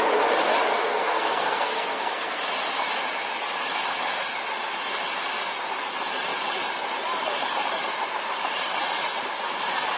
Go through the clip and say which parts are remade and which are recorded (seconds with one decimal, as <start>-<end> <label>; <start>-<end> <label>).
0.0-0.9 recorded; 0.9-2.4 remade; 2.4-10.0 recorded